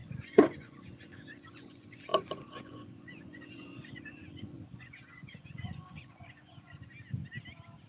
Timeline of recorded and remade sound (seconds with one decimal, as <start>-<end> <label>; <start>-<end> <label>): 0.0-6.9 remade; 6.9-7.9 recorded